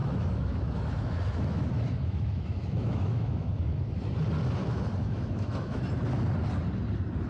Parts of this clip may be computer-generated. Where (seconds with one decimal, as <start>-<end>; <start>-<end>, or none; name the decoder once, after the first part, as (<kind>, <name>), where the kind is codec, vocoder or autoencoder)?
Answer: 0.0-4.0 (autoencoder, DAC-VAE); 4.6-5.8